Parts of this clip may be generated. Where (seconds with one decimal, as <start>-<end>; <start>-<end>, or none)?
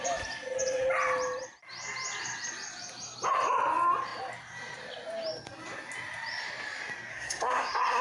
7.1-8.0